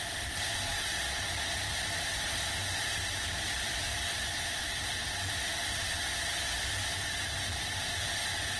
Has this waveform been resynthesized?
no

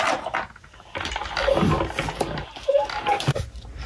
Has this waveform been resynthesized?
no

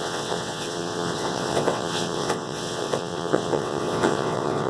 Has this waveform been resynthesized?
yes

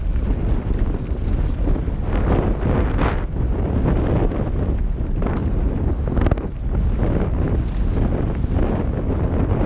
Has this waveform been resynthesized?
no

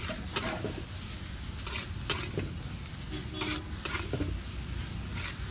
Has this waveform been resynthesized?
no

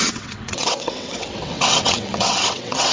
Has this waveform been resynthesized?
yes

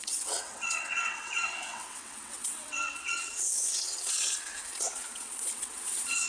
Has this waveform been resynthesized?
yes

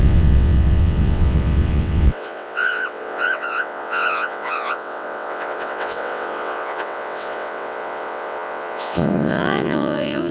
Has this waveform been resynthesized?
yes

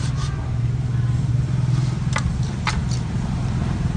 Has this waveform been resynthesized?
no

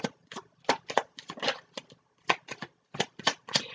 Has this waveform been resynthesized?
no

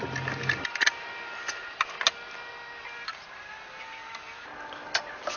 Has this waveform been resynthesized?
no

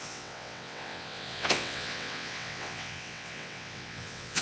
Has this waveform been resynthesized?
yes